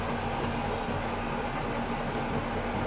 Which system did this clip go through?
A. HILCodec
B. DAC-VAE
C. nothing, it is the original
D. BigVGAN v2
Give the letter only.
C